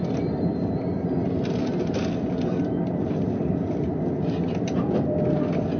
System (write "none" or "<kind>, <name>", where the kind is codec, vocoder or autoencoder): none